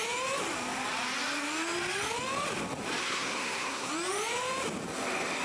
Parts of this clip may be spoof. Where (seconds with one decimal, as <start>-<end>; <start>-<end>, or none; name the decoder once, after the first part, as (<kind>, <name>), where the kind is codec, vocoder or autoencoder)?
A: 3.0-3.9 (codec, SNAC)